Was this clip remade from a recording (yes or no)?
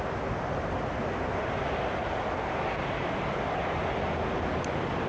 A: no